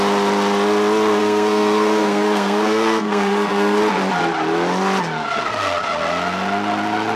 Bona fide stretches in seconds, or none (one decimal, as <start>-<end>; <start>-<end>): 0.0-1.2; 3.8-7.2